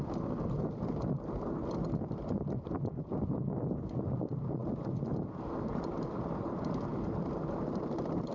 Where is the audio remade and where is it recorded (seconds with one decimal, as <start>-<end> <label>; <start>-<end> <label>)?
0.0-8.3 recorded